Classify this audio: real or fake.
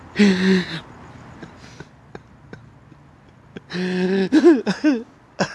real